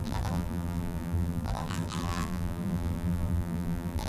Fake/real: fake